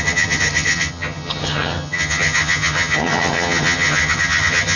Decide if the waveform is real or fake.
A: fake